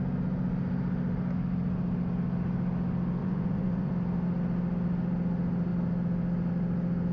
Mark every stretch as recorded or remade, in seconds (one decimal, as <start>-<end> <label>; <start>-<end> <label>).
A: 0.0-3.2 recorded; 3.2-3.9 remade; 3.9-7.1 recorded